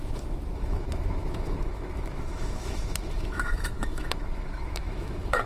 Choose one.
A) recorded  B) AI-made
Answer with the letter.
B